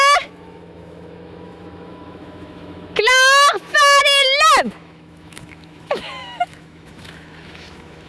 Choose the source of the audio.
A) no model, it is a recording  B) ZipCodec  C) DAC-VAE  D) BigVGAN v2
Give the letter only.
C